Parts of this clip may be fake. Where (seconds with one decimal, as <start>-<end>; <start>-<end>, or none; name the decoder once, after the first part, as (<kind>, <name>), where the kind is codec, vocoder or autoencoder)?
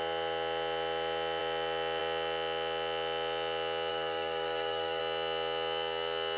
3.9-5.0 (codec, DAC)